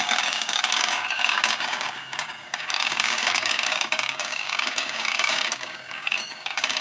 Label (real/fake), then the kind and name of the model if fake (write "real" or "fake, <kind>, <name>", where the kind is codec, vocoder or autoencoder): fake, codec, DAC